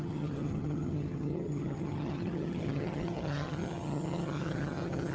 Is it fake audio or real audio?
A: fake